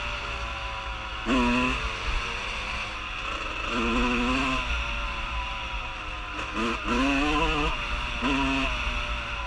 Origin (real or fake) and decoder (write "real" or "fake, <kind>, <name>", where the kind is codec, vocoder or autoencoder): real